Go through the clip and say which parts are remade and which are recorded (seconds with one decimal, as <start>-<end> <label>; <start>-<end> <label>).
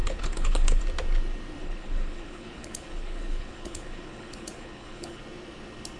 0.0-0.8 remade; 0.8-1.6 recorded; 1.6-5.2 remade; 5.2-6.0 recorded